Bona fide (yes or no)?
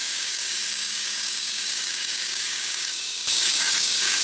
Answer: no